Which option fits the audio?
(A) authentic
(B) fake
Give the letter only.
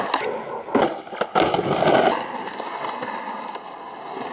A